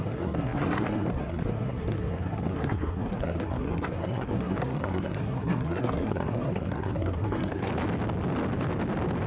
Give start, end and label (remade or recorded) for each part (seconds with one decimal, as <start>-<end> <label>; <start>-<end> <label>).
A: 0.0-7.7 remade; 7.7-9.3 recorded